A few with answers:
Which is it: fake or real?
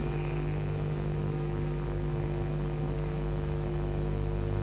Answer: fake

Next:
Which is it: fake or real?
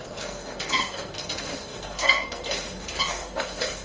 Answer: fake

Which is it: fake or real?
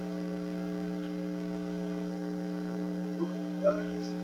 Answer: fake